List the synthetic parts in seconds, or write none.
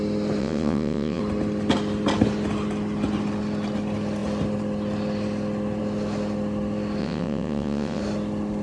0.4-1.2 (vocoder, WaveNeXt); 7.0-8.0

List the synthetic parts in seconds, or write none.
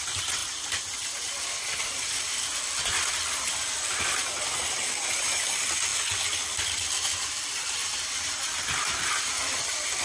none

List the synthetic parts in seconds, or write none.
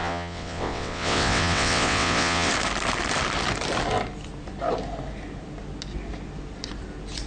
0.0-2.5 (vocoder, WaveNeXt)